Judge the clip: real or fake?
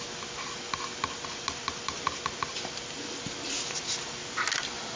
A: real